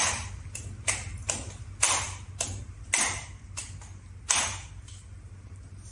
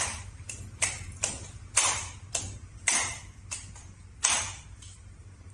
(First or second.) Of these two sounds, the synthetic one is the second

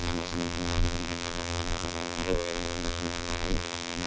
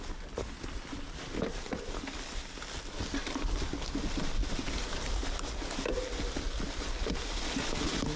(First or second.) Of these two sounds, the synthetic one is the first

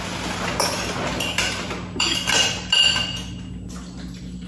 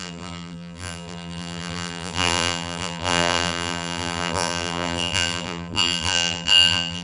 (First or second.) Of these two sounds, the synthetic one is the second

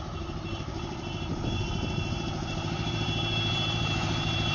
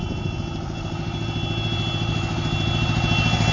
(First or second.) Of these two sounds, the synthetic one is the first